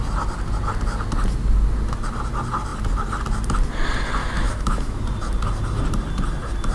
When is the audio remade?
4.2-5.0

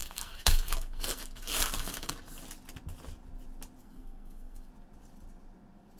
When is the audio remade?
0.0-2.1; 3.8-4.7

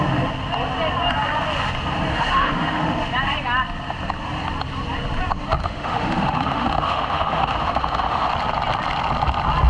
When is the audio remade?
2.1-2.8; 5.6-8.3

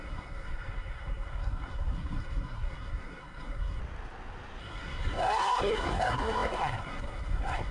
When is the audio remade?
0.0-3.8; 4.6-7.7

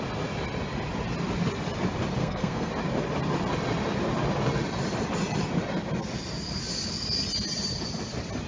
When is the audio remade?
2.2-2.7

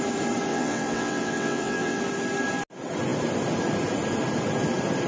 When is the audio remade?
0.5-2.0

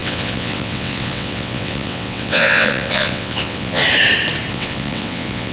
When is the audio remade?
0.0-3.8; 4.5-5.5

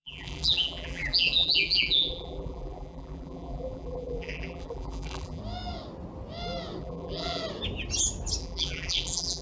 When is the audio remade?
0.0-5.4; 6.8-7.4; 8.4-9.4